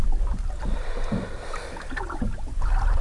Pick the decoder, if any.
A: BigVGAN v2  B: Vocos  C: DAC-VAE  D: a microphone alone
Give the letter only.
D